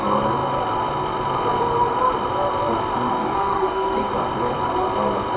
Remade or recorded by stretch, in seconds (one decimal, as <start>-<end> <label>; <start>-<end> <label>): 0.0-3.1 recorded; 3.1-4.1 remade; 4.1-5.4 recorded